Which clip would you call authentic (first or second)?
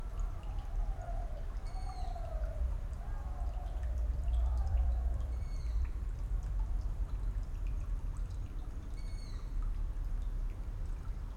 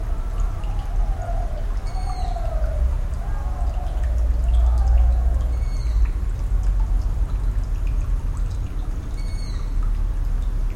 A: second